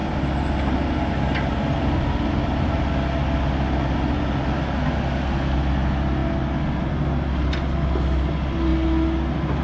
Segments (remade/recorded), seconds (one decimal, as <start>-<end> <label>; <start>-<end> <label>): 0.0-9.6 recorded